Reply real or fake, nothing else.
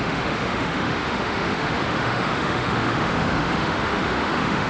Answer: fake